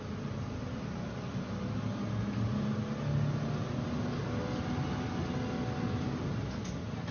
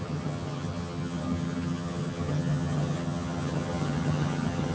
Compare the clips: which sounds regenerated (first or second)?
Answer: second